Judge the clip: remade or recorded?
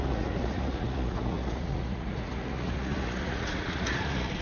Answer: remade